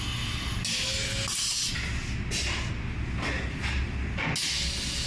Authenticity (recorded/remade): recorded